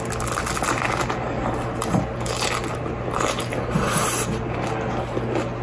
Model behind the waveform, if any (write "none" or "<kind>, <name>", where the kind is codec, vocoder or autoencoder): none